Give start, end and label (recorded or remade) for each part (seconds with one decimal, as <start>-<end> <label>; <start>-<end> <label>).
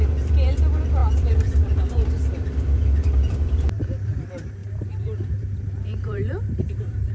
0.0-1.0 recorded; 1.0-4.1 remade; 4.1-4.6 recorded; 4.6-7.1 remade